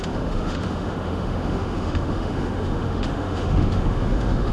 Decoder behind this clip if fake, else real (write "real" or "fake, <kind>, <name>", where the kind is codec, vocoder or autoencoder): fake, autoencoder, DAC-VAE